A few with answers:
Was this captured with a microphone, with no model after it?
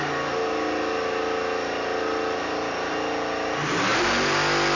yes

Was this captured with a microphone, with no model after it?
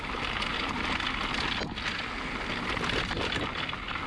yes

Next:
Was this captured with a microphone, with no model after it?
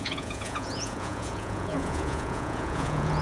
no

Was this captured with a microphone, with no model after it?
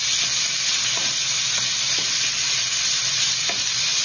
yes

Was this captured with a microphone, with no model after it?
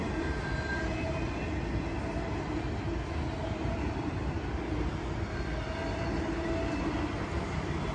yes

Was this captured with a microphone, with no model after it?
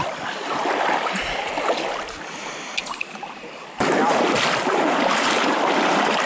yes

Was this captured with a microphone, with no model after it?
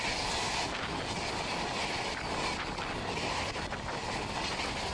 yes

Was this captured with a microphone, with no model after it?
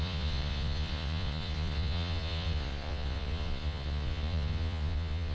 no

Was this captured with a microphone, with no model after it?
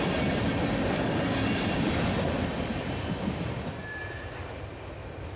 yes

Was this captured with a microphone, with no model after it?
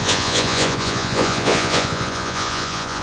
no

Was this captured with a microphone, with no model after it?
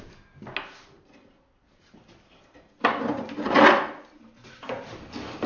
yes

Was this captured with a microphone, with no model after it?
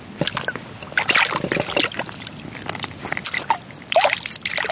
yes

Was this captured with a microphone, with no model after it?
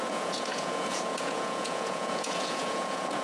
no